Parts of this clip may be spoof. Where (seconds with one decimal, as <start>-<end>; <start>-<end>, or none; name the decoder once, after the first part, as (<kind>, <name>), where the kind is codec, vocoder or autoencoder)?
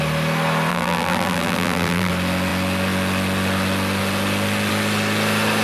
0.7-2.1 (vocoder, BigVGAN v2)